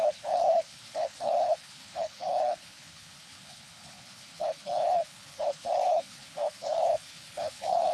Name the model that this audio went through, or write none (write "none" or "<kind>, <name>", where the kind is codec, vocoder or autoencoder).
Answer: codec, HILCodec